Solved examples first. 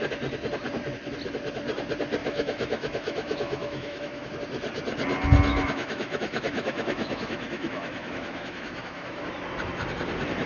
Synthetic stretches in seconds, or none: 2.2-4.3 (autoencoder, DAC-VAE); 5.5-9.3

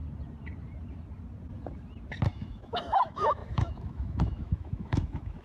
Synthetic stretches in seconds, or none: 2.3-5.4 (autoencoder, DAC-VAE)

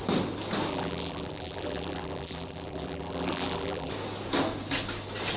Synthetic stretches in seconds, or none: 0.7-3.9 (vocoder, BigVGAN v2)

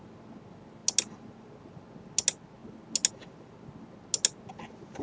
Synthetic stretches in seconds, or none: none

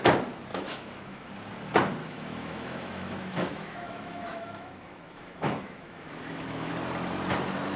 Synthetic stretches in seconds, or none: 0.5-1.3 (autoencoder, DAC-VAE); 2.0-6.7

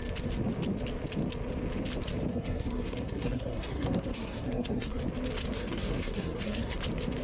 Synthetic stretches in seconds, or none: 2.3-5.0 (codec, SNAC); 5.6-6.8